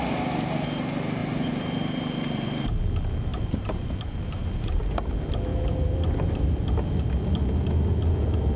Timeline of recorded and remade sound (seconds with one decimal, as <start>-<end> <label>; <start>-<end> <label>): 0.0-1.2 recorded; 1.2-2.8 remade; 2.8-3.3 recorded; 3.3-4.8 remade; 4.8-5.5 recorded; 5.5-6.6 remade; 6.6-8.6 recorded